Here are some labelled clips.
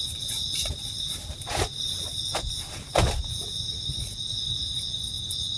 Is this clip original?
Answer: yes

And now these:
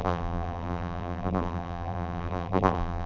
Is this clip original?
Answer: no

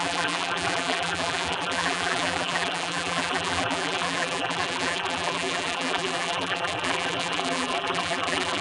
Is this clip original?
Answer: no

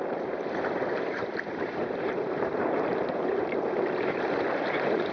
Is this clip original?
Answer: no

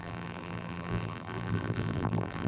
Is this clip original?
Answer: no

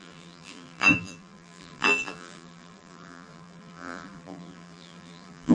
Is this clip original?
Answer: no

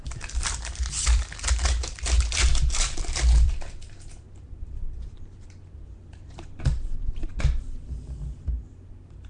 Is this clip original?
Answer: no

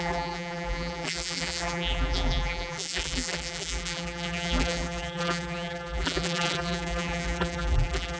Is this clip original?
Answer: no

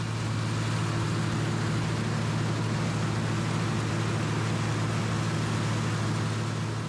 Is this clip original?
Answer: yes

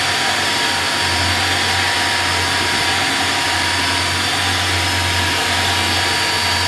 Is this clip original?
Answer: yes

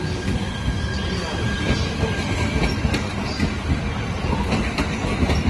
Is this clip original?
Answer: yes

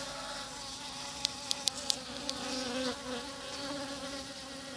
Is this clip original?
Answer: no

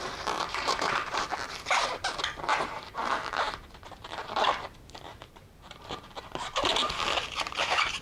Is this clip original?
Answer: no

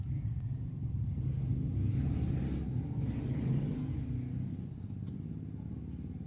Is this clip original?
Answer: yes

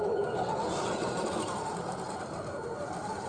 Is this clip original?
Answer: yes